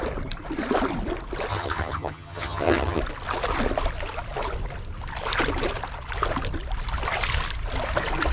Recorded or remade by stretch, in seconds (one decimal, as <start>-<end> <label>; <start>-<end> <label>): 0.0-1.5 recorded; 1.5-3.0 remade; 3.0-8.3 recorded